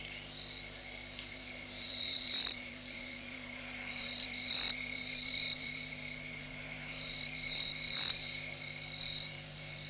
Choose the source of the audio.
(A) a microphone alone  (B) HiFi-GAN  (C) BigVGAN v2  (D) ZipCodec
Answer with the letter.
C